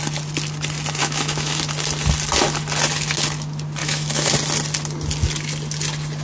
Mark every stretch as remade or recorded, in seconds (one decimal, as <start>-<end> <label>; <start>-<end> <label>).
0.0-1.0 recorded; 1.0-1.6 remade; 1.6-3.8 recorded; 3.8-4.3 remade; 4.3-6.2 recorded